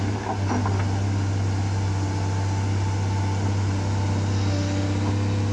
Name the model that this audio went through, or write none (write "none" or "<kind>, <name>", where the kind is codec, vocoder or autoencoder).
none